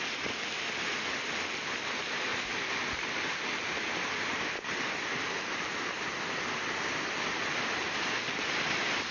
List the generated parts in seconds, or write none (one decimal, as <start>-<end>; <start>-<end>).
2.3-3.4